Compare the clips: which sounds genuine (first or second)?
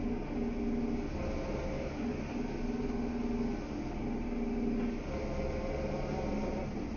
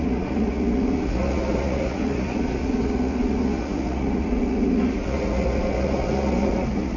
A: first